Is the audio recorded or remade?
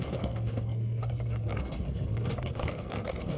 remade